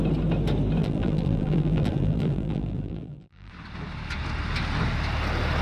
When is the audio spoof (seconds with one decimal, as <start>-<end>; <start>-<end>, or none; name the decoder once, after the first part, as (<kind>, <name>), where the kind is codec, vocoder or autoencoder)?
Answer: 0.8-3.5 (vocoder, BigVGAN v2)